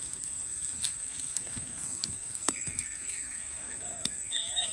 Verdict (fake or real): fake